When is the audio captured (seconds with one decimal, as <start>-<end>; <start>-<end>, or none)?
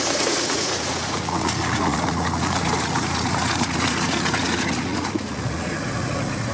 none